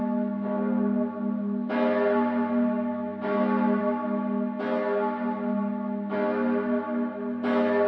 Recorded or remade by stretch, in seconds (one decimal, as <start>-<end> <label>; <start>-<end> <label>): 0.0-7.9 recorded